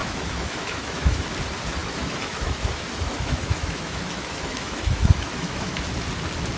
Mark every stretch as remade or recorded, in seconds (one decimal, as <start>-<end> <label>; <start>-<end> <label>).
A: 0.0-1.2 remade; 1.2-1.8 recorded; 1.8-5.8 remade; 5.8-6.6 recorded

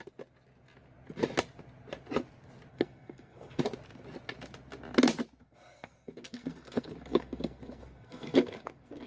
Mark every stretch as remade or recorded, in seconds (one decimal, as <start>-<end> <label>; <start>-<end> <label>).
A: 0.0-2.7 recorded; 2.7-3.6 remade; 3.6-5.4 recorded; 5.4-9.1 remade

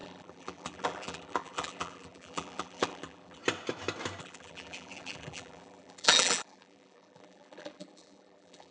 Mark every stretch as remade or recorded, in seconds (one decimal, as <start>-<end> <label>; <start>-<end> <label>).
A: 0.0-3.4 remade; 3.4-4.2 recorded; 4.2-8.7 remade

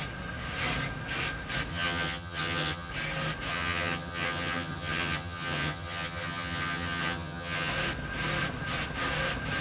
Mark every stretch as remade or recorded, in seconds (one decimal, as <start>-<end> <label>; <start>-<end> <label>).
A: 0.0-1.7 recorded; 1.7-2.9 remade; 2.9-3.5 recorded; 3.5-7.7 remade; 7.7-9.6 recorded

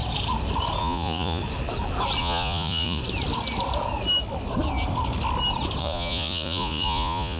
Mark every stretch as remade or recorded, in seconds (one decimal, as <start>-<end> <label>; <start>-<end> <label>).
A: 0.0-0.8 recorded; 0.8-1.4 remade; 1.4-2.2 recorded; 2.2-3.0 remade; 3.0-5.8 recorded; 5.8-7.4 remade

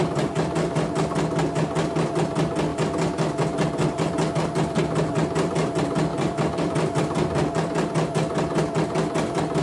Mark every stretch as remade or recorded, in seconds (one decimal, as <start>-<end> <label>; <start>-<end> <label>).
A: 0.0-9.6 recorded

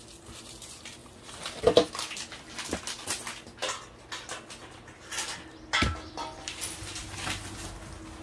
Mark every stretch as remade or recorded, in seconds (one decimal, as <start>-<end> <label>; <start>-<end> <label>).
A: 0.0-1.0 recorded; 1.0-1.6 remade; 1.6-8.2 recorded